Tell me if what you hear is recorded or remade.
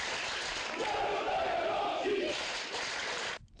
recorded